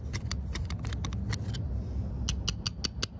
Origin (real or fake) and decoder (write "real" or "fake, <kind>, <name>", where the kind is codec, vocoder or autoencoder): real